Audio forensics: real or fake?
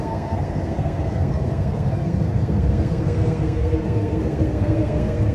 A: fake